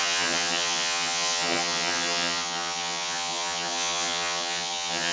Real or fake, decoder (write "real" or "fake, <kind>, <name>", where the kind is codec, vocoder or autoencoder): fake, vocoder, HiFi-GAN